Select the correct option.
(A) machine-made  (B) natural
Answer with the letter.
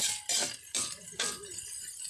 B